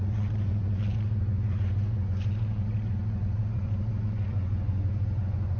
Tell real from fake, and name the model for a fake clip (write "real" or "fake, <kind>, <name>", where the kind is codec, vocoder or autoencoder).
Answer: fake, vocoder, Vocos